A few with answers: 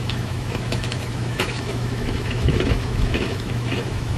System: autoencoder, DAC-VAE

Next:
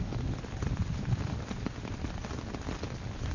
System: none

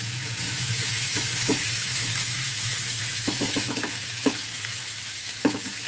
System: autoencoder, DAC-VAE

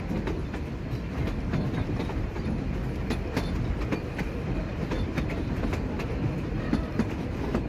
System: none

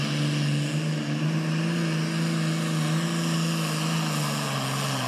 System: none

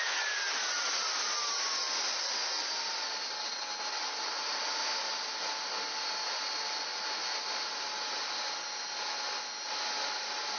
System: none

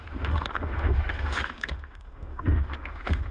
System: autoencoder, DAC-VAE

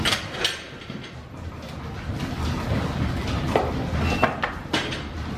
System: none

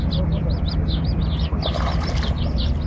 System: none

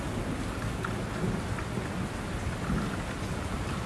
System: none